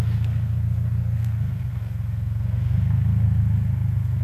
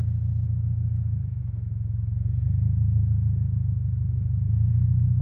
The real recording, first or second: second